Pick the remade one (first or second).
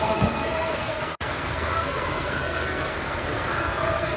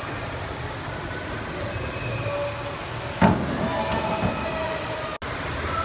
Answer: first